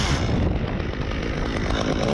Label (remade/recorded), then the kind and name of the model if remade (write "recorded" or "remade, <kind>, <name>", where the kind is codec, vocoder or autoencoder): recorded